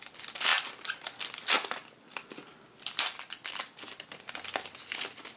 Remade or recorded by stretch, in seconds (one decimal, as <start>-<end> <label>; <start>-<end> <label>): 0.0-5.4 recorded